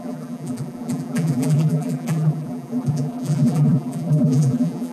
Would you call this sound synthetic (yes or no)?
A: yes